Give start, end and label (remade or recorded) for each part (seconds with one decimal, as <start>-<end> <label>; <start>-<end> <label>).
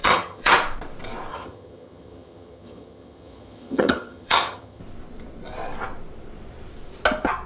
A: 0.0-0.5 remade; 0.5-1.3 recorded; 1.3-4.8 remade; 4.8-7.5 recorded